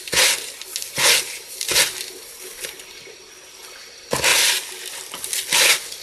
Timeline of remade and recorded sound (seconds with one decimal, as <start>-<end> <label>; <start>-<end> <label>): 0.0-6.0 recorded